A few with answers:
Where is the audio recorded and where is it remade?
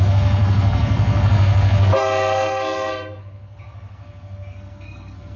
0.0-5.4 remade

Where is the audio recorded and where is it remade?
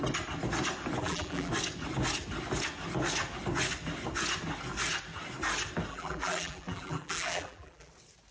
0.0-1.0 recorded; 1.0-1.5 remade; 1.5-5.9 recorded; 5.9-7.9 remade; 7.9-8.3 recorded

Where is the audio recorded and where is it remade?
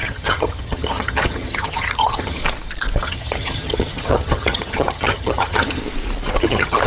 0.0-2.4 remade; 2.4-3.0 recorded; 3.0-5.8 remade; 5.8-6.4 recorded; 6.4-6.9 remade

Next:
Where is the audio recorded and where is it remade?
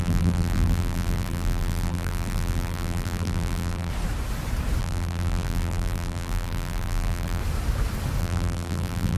0.0-3.9 remade; 3.9-4.8 recorded; 4.8-7.4 remade; 7.4-8.2 recorded; 8.2-9.2 remade